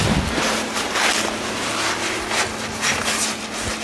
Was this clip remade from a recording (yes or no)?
no